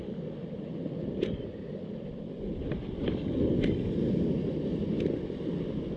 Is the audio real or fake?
real